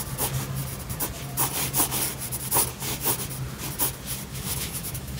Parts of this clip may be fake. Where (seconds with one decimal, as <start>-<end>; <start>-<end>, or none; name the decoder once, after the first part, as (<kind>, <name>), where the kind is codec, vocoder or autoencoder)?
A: 4.3-5.2 (autoencoder, DAC-VAE)